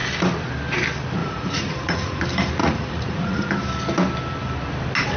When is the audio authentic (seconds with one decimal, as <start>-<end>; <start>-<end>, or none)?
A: 0.0-1.2; 2.2-2.6; 3.5-5.2